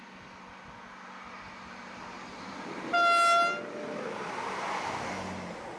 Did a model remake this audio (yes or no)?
no